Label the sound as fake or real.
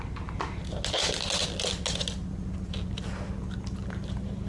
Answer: real